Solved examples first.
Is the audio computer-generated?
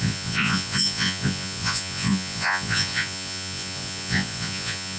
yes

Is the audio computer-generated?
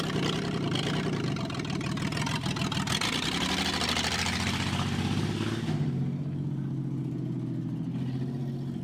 no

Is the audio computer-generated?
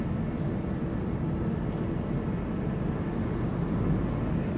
no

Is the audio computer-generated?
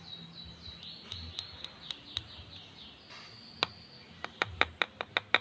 no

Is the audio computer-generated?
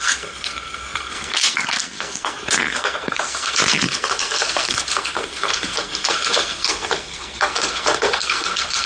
yes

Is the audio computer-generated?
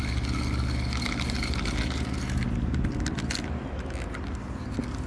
no